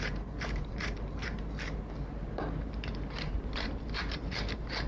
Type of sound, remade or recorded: remade